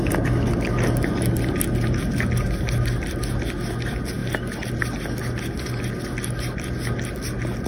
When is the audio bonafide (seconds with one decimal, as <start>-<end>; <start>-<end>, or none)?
0.0-7.7